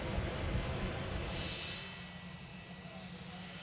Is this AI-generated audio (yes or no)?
no